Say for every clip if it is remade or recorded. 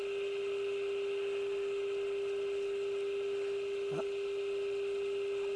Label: recorded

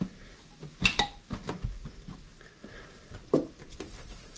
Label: recorded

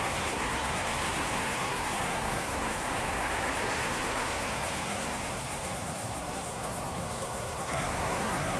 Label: remade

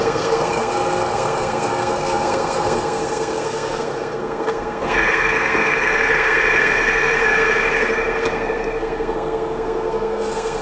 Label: remade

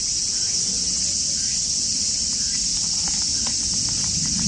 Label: recorded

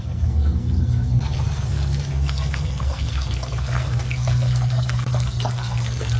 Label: remade